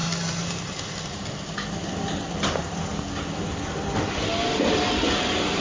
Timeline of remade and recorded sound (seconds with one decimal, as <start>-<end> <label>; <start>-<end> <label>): 0.0-5.6 recorded